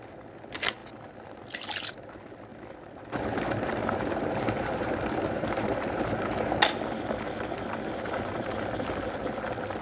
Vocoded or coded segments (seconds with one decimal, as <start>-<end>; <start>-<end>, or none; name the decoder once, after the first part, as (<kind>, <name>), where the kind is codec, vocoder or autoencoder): 2.5-6.5 (vocoder, BigVGAN v2)